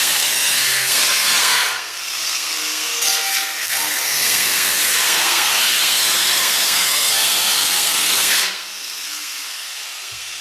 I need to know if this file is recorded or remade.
remade